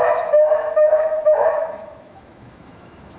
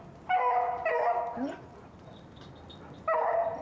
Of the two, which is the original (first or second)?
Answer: second